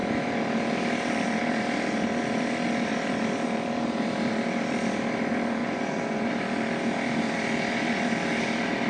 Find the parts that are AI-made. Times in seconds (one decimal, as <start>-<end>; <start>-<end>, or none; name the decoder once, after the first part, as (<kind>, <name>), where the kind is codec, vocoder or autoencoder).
5.6-6.3 (vocoder, Vocos)